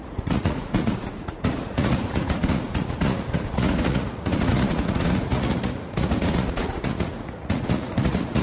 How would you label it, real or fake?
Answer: fake